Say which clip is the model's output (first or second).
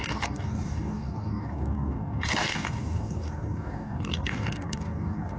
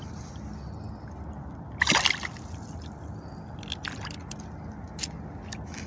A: first